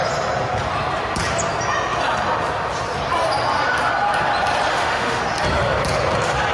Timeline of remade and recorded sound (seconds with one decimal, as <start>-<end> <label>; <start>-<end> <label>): 0.0-4.7 recorded; 4.7-5.2 remade; 5.2-6.5 recorded